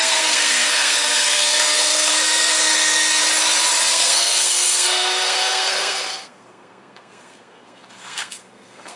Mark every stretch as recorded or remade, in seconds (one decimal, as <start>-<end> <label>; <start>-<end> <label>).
0.0-3.2 remade; 3.2-3.9 recorded; 3.9-9.0 remade